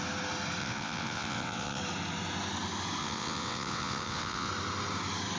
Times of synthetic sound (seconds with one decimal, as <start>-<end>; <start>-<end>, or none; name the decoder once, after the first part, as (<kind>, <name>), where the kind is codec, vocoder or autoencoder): 0.6-1.8 (vocoder, WaveNeXt); 3.0-4.5